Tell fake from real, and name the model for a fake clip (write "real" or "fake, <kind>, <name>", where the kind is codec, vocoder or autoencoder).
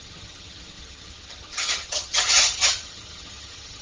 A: fake, vocoder, HiFi-GAN